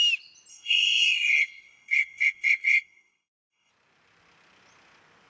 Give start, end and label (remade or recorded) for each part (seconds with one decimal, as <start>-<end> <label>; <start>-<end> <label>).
0.0-0.5 recorded; 0.5-3.7 remade; 3.7-5.3 recorded